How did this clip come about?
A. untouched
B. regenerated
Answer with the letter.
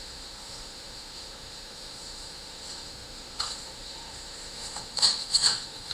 B